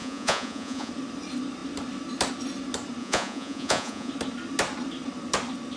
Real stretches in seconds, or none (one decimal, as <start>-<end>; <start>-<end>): 0.9-3.0; 4.1-5.8

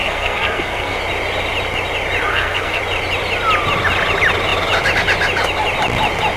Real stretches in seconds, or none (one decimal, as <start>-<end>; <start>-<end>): 1.0-2.3; 2.8-6.4

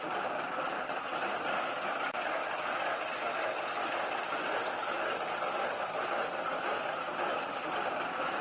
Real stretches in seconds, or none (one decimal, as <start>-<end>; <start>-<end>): 0.0-8.4

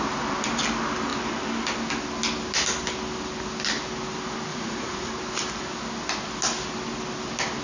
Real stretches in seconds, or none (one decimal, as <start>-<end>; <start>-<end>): 0.0-4.5; 5.1-7.6

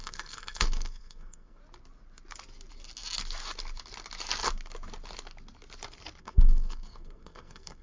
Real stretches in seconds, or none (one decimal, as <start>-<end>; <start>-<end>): 1.6-6.2

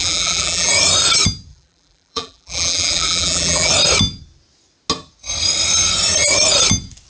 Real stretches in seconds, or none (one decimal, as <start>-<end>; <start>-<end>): 0.7-1.5; 3.7-7.1